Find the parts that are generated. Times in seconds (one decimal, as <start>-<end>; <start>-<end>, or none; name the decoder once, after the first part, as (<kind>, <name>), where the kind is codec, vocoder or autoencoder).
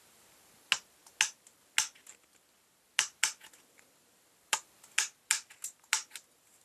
none